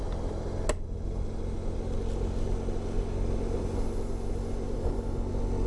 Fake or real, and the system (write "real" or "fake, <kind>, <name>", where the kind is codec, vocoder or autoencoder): real